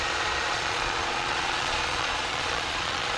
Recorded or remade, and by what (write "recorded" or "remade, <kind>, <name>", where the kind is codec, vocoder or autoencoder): remade, vocoder, Vocos